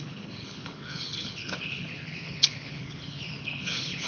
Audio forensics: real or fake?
fake